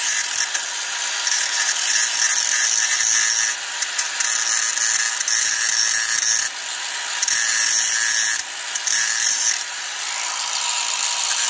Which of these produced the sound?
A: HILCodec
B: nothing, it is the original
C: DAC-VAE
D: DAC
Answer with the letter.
B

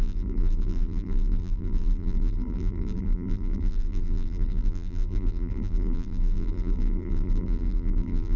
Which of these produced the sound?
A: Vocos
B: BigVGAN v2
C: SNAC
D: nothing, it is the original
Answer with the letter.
B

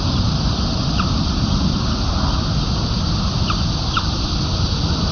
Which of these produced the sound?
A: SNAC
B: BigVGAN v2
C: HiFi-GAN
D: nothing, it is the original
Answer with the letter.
D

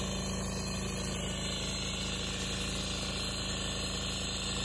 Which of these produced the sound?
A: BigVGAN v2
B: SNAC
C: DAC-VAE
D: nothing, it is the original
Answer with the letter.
D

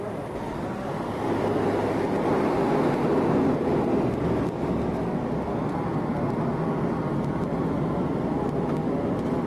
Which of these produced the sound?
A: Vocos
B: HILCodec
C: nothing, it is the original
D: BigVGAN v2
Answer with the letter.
C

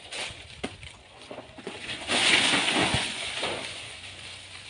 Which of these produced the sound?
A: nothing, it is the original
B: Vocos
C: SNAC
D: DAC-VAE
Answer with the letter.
B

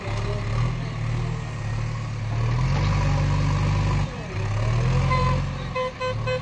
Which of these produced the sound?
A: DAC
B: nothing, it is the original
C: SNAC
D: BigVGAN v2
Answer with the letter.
B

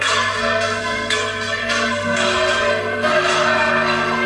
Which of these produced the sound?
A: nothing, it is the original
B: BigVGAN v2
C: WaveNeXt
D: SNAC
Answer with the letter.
D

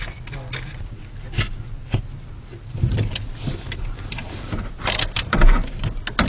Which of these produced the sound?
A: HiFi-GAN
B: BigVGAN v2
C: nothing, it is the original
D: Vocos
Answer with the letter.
C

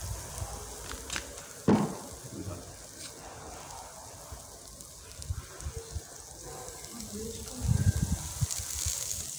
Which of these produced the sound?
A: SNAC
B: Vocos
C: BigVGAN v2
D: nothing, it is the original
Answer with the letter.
D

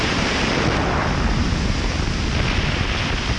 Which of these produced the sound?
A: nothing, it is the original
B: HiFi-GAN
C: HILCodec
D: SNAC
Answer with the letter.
A